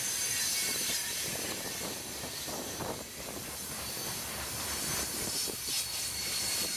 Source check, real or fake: fake